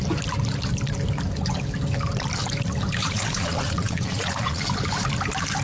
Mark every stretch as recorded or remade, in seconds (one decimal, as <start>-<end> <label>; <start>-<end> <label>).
0.0-3.0 recorded; 3.0-4.6 remade; 4.6-5.6 recorded